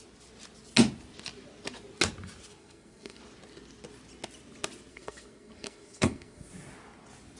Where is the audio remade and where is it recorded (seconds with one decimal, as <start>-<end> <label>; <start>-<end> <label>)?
0.0-2.6 recorded; 2.6-3.2 remade; 3.2-4.9 recorded; 4.9-6.5 remade; 6.5-7.4 recorded